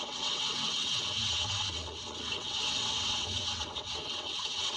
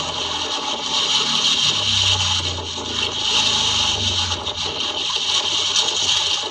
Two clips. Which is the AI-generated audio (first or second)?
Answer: first